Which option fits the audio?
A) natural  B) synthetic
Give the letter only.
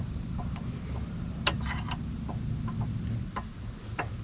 A